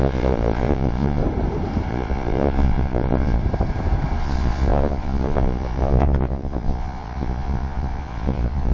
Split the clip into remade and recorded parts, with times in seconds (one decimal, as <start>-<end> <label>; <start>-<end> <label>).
0.0-1.2 remade; 1.2-1.9 recorded; 1.9-3.4 remade; 3.4-4.2 recorded; 4.2-8.7 remade